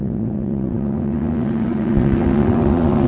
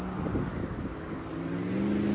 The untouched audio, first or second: second